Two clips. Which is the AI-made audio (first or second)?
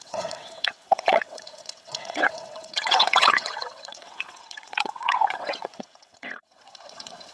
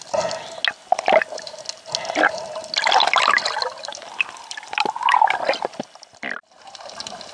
first